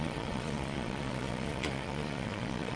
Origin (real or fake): fake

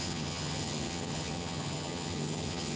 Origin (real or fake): fake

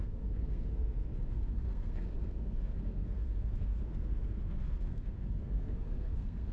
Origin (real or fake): fake